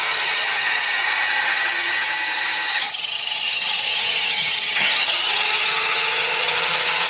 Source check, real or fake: fake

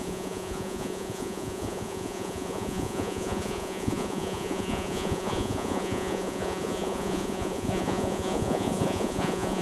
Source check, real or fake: fake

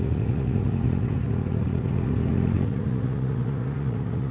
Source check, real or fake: fake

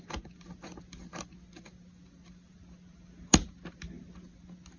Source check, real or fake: real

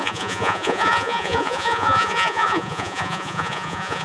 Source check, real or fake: fake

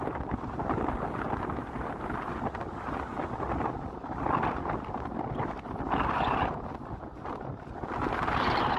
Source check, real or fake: real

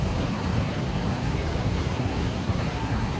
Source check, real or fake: fake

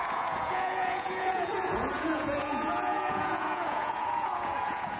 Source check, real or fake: fake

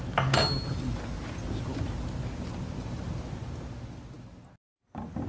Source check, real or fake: real